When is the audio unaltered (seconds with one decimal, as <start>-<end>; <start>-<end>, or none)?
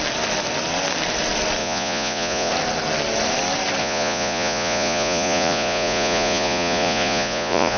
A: 0.0-1.6; 2.5-3.8